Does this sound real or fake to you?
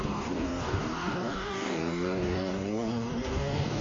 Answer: fake